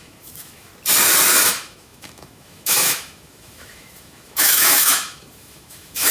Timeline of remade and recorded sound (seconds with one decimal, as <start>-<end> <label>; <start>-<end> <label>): 0.0-0.7 remade; 0.7-1.3 recorded; 1.3-6.1 remade